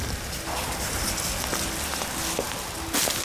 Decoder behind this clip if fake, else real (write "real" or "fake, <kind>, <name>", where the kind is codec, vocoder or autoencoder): real